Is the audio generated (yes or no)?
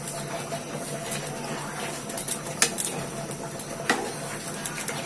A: no